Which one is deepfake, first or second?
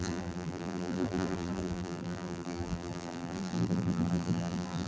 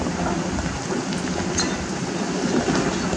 first